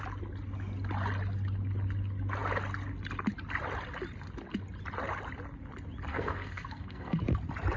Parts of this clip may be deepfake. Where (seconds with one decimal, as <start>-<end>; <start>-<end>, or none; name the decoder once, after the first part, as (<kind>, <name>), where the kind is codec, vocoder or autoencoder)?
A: 6.1-7.2 (codec, SNAC)